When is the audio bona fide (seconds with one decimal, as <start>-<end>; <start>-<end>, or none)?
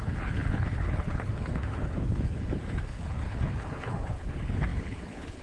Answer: none